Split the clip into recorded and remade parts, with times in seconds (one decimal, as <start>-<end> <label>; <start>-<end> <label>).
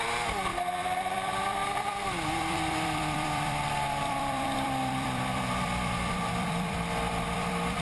0.0-7.8 remade